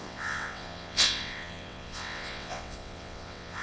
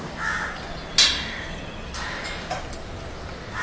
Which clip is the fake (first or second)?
first